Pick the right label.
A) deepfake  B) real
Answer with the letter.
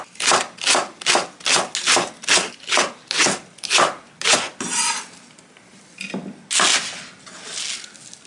B